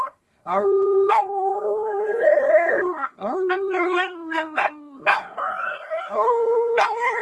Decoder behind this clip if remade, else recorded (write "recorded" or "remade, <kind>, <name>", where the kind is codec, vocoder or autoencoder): remade, codec, SNAC